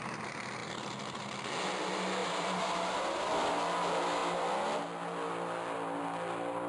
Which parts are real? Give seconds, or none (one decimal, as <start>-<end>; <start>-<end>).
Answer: 0.0-2.2; 3.3-6.7